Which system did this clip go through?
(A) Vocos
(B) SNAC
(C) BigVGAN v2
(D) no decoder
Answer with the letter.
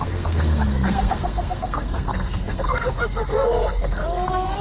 B